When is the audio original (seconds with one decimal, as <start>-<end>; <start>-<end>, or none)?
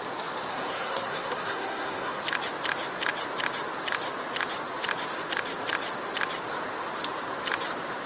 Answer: 0.0-0.5; 2.2-8.1